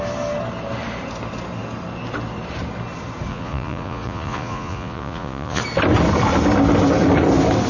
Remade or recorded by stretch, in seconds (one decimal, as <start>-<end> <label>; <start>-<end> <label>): 0.0-3.3 recorded; 3.3-5.6 remade; 5.6-7.7 recorded